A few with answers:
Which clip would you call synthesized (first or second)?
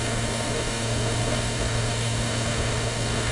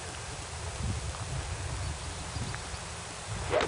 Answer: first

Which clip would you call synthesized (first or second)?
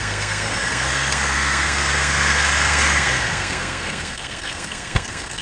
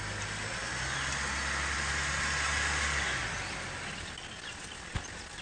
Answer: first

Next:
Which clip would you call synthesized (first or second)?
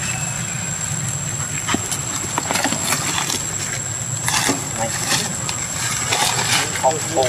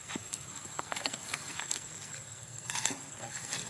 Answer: second